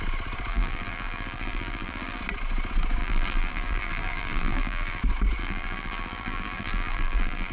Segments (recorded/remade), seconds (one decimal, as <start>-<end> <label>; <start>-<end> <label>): 0.0-0.5 recorded; 0.5-2.2 remade; 2.2-3.0 recorded; 3.0-5.0 remade; 5.0-5.4 recorded; 5.4-7.5 remade